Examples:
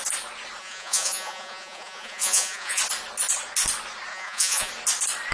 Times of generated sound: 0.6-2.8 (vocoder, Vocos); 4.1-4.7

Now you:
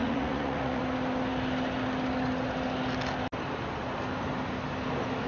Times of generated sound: 0.0-0.8 (vocoder, Vocos)

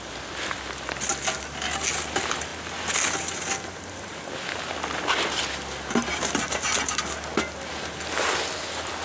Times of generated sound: none